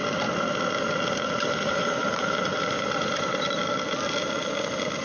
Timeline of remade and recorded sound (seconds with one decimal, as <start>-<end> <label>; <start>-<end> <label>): 0.0-1.4 recorded; 1.4-3.6 remade; 3.6-5.0 recorded